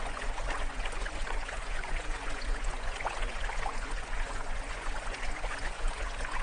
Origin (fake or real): fake